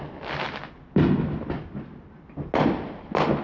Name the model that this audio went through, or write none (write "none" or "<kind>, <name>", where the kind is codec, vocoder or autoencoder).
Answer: none